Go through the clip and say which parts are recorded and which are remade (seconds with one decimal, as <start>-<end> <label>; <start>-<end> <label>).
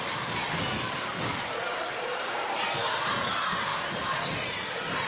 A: 0.0-5.1 recorded